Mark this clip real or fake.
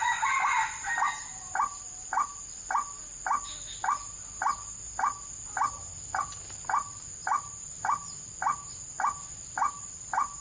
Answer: real